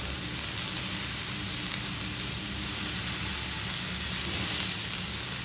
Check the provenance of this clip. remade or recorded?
recorded